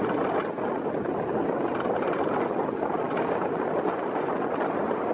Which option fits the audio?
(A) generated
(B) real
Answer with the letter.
B